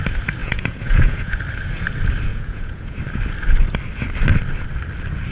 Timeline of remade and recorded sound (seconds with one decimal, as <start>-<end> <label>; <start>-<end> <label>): 0.0-0.4 recorded; 0.4-1.4 remade; 1.4-2.3 recorded; 2.3-3.0 remade; 3.0-5.3 recorded